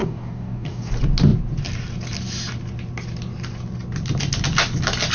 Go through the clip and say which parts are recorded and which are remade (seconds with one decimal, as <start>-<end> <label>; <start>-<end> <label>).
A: 0.0-0.9 remade; 0.9-5.1 recorded